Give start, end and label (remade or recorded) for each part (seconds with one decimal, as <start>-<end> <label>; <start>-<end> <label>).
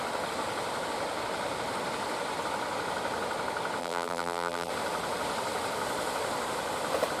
0.0-3.8 recorded; 3.8-4.7 remade; 4.7-7.2 recorded